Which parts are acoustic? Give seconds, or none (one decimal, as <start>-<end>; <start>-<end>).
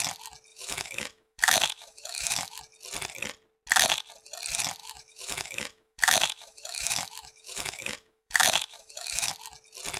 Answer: 0.0-0.5; 2.6-4.8; 9.3-10.0